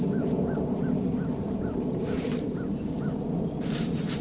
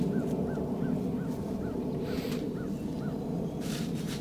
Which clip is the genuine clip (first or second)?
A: second